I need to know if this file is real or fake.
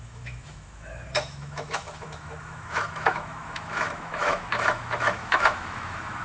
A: fake